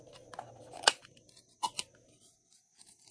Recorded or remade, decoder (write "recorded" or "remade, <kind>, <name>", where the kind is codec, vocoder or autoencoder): recorded